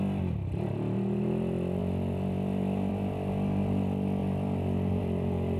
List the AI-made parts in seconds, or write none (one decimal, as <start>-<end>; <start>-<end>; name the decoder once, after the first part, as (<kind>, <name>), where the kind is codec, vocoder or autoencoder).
none